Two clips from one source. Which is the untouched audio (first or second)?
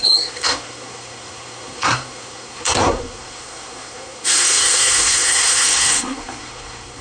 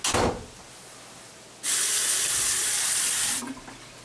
second